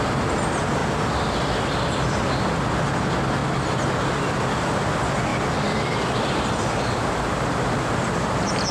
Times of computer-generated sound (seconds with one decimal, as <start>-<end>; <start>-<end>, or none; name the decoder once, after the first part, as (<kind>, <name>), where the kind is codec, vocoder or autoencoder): none